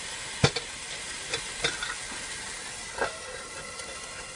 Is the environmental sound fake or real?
real